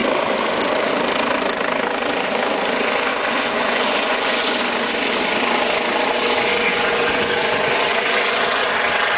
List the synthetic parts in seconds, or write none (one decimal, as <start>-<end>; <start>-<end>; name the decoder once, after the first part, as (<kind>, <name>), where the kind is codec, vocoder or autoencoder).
3.1-4.6 (vocoder, Vocos); 6.7-8.7